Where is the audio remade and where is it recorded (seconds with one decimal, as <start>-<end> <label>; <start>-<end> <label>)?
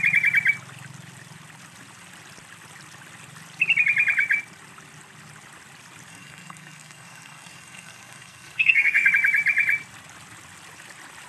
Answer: 0.0-6.1 recorded; 6.1-9.1 remade; 9.1-11.3 recorded